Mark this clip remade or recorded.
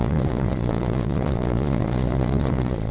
remade